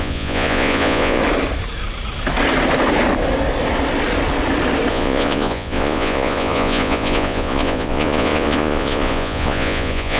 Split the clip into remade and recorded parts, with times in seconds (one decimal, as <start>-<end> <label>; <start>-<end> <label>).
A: 0.0-1.2 remade; 1.2-4.9 recorded; 4.9-10.2 remade